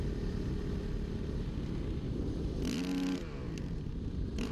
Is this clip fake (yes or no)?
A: no